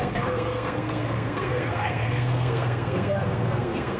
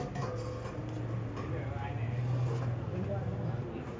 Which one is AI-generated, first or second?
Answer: first